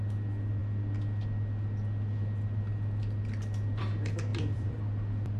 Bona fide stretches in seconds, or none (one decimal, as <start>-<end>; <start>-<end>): 0.0-4.3; 4.8-5.4